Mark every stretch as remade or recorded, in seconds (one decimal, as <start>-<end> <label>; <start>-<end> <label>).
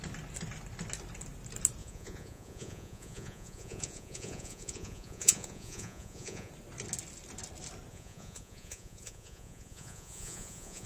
0.0-1.8 recorded; 1.8-6.5 remade; 6.5-7.9 recorded; 7.9-10.9 remade